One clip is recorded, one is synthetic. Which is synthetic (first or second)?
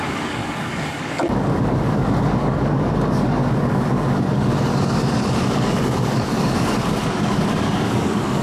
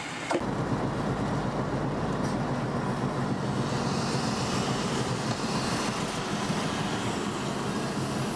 first